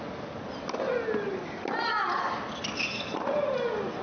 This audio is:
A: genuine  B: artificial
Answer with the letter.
A